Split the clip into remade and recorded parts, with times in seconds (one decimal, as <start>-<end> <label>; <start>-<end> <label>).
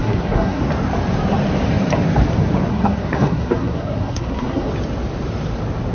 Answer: 0.0-0.6 remade; 0.6-2.7 recorded; 2.7-4.7 remade; 4.7-5.9 recorded